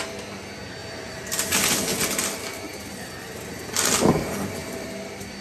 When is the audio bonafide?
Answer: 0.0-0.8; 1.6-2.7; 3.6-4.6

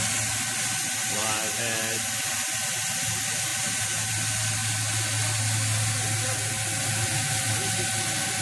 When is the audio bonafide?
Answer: 0.0-8.4

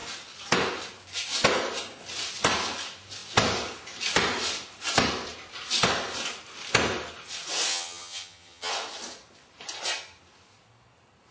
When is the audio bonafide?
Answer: 0.0-7.7; 8.7-11.3

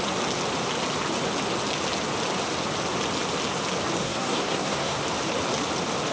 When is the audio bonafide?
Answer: 0.0-4.0; 5.0-6.1

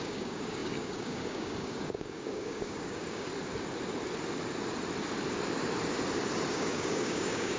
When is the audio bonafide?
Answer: 3.3-6.5

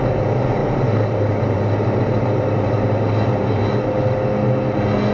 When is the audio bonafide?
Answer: 0.0-0.6; 3.7-5.1

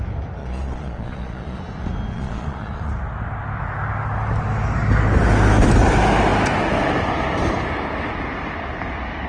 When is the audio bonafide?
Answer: 0.0-0.4; 1.6-2.1; 2.9-9.3

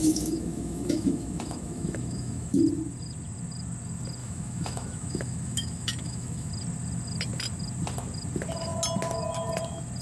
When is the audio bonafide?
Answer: 2.6-4.2; 6.5-10.0